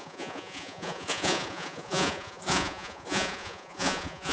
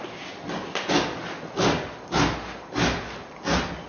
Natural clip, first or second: second